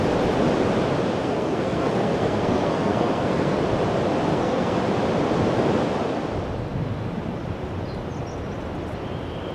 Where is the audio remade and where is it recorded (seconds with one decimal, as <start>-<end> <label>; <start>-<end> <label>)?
0.0-1.2 recorded; 1.2-3.6 remade; 3.6-4.3 recorded; 4.3-4.8 remade; 4.8-9.5 recorded